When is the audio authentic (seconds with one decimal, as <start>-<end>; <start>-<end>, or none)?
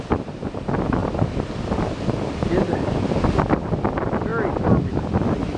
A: 0.0-1.0; 2.3-5.6